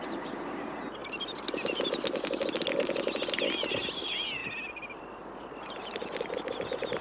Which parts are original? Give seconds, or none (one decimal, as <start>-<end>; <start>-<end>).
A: 0.0-7.0